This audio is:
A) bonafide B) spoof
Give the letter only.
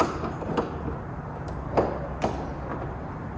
A